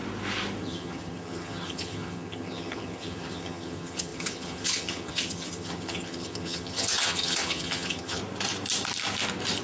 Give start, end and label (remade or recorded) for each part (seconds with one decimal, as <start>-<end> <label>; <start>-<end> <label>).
0.0-0.6 recorded; 0.6-8.2 remade; 8.2-9.6 recorded